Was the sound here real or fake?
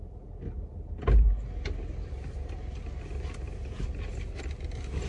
real